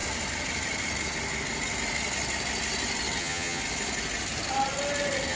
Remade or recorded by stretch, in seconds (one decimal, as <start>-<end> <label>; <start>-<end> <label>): 0.0-3.2 recorded; 3.2-3.6 remade; 3.6-5.3 recorded